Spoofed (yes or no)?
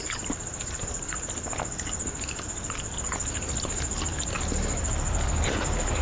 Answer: no